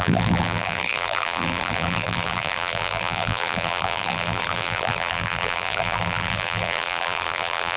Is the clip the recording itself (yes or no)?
no